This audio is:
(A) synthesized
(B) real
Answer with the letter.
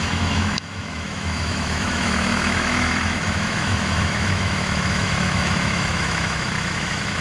A